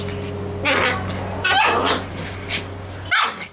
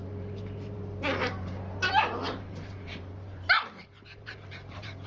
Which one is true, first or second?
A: first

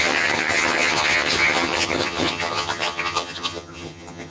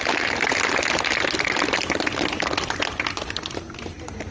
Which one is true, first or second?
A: second